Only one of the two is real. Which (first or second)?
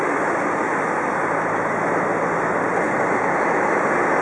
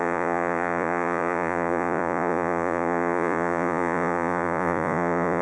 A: first